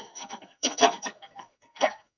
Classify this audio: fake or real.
fake